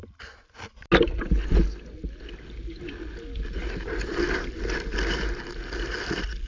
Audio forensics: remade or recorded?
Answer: recorded